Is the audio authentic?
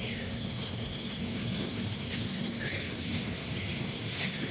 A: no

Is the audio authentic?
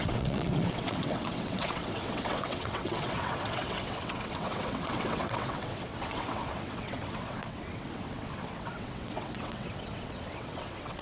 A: no